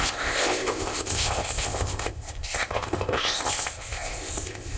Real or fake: fake